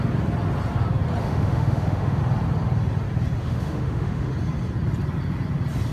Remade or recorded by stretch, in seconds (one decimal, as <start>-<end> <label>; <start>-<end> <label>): 0.0-1.2 recorded; 1.2-2.2 remade; 2.2-3.4 recorded; 3.4-4.3 remade; 4.3-5.9 recorded